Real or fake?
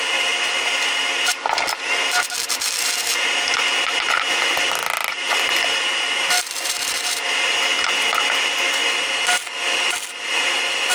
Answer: real